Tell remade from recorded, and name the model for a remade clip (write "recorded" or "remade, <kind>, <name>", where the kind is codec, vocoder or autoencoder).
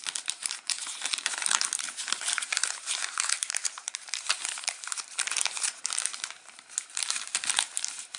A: remade, vocoder, BigVGAN v2